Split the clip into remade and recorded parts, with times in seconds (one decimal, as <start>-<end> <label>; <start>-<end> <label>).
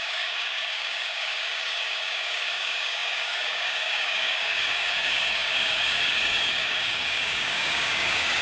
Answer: 0.0-8.4 remade